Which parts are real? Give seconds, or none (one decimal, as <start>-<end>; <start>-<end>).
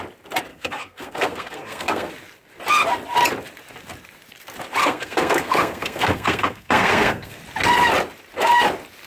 0.0-0.5; 2.1-4.8; 7.4-9.1